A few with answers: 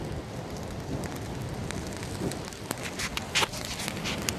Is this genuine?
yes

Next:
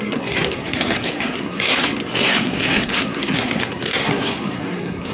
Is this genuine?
no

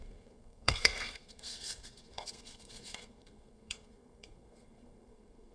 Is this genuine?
no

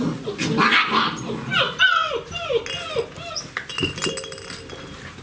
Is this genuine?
yes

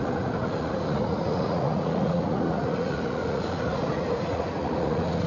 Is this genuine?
no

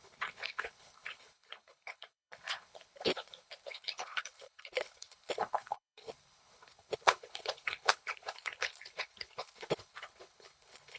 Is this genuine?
no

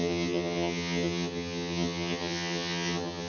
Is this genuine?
no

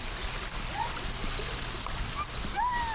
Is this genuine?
yes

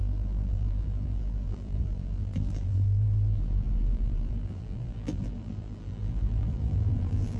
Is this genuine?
no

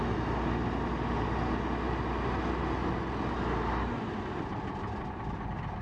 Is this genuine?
yes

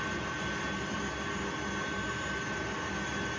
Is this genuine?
yes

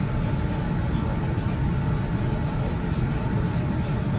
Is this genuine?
yes